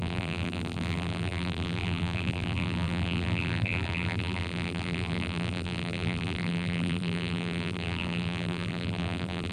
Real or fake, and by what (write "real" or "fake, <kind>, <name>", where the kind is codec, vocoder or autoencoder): fake, vocoder, BigVGAN v2